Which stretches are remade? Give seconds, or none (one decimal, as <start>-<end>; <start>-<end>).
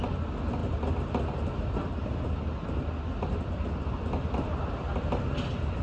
none